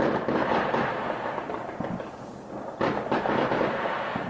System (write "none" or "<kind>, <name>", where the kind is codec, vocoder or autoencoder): none